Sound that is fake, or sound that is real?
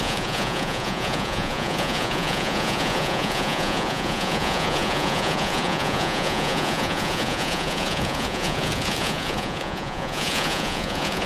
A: fake